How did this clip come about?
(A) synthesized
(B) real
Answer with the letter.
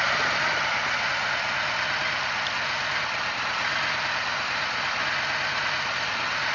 B